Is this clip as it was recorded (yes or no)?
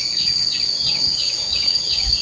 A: no